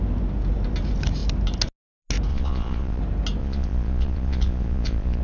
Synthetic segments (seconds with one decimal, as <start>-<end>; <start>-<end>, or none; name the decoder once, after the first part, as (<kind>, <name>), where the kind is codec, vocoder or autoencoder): 2.3-3.0 (vocoder, Vocos); 3.4-5.2